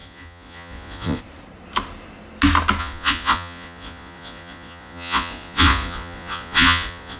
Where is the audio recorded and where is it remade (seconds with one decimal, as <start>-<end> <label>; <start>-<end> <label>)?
0.0-1.2 remade; 1.2-2.8 recorded; 2.8-7.2 remade